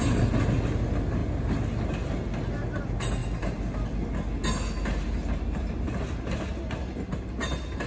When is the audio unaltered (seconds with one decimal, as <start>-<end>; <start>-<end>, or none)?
0.0-7.9